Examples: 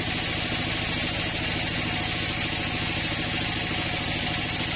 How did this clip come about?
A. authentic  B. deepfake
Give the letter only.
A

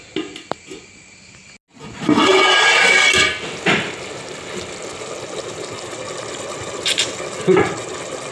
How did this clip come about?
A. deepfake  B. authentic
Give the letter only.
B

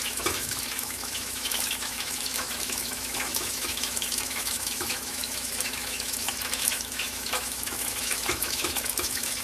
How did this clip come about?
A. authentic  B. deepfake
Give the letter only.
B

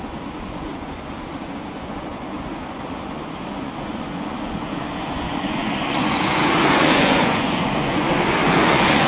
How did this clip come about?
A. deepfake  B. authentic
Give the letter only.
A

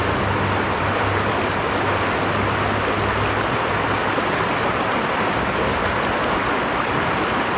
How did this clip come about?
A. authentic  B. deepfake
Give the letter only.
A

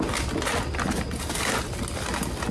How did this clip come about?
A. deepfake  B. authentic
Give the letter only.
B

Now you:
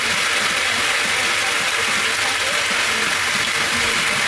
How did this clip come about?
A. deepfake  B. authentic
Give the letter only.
B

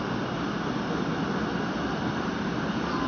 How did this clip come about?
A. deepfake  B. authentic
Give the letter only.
B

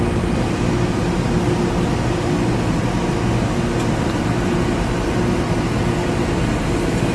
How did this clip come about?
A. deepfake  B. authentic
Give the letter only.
B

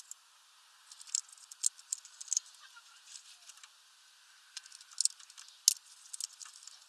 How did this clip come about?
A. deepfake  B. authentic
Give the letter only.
B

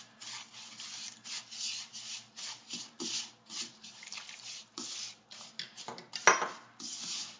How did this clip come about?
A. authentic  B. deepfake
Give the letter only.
A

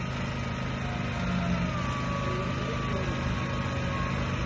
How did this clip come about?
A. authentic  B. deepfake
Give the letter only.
A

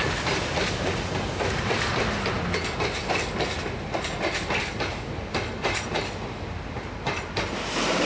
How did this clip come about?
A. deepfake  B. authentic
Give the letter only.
B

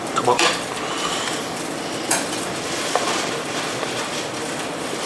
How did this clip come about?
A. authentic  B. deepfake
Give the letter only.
B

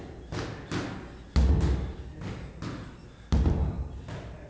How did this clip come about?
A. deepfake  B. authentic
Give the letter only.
B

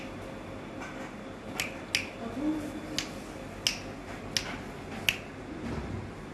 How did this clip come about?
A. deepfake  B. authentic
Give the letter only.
B